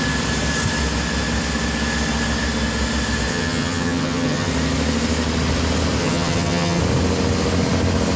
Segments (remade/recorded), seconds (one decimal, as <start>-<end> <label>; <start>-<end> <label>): 0.0-3.3 recorded; 3.3-4.5 remade; 4.5-6.0 recorded; 6.0-6.8 remade; 6.8-8.2 recorded